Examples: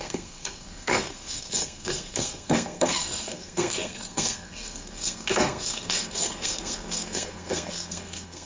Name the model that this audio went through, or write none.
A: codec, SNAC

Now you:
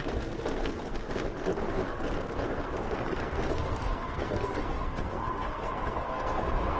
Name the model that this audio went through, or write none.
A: codec, SNAC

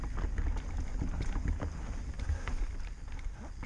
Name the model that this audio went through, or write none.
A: none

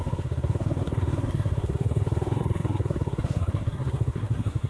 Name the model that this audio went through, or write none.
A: codec, SNAC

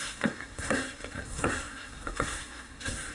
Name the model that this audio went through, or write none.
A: codec, SNAC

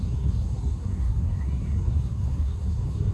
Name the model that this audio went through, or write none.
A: codec, SNAC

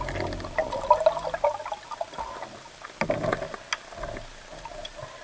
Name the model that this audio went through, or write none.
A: none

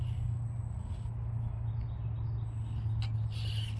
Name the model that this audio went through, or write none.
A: none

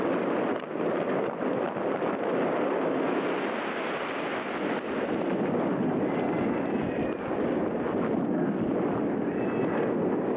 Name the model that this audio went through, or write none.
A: none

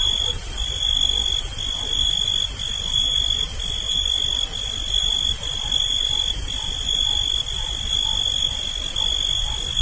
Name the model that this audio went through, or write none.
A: none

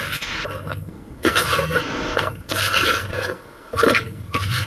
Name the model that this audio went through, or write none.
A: codec, SNAC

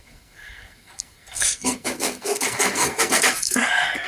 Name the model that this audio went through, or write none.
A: codec, SNAC